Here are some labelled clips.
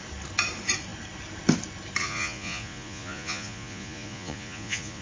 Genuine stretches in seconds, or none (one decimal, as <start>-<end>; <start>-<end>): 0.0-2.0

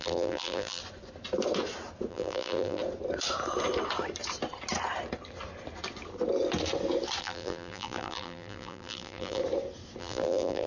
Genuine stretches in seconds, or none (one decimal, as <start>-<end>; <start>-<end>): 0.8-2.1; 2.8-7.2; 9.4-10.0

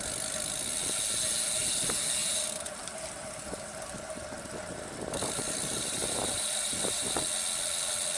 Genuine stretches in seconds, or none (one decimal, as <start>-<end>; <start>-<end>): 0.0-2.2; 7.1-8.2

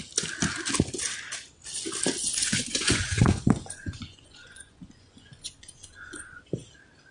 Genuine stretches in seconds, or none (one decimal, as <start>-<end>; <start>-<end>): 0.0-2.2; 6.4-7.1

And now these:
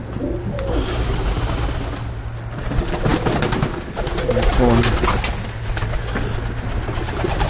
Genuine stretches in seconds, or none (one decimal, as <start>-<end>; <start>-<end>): 0.0-7.5

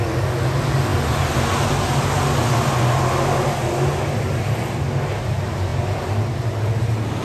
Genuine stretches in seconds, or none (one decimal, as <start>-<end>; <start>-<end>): 0.0-7.2

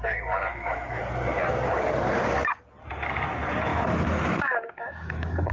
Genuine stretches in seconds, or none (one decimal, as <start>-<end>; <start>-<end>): 0.0-0.5; 1.0-3.7